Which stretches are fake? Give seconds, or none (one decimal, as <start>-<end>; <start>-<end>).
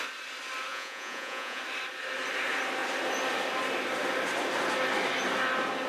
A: 0.7-1.6